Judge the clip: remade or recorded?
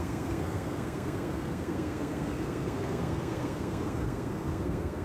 remade